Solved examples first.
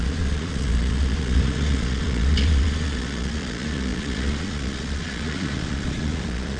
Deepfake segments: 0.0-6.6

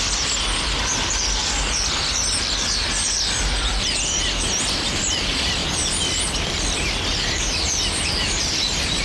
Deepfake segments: 0.0-1.4; 2.9-5.6; 8.4-9.0

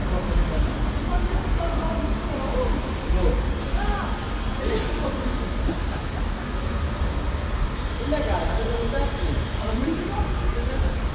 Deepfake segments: none